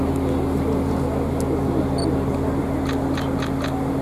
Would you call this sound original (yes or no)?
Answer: yes